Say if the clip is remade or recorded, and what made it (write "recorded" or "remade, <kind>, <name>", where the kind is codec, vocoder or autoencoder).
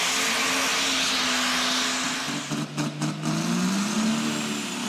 recorded